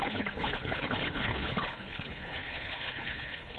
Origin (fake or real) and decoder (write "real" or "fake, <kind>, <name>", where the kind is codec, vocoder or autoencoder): fake, codec, HILCodec